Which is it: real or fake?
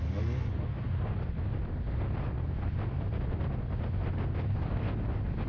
real